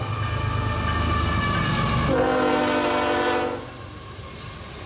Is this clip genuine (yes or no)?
yes